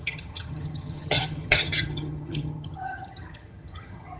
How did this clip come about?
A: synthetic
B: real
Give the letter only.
A